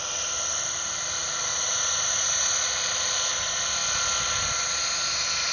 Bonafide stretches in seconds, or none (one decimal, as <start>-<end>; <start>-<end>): 0.0-5.5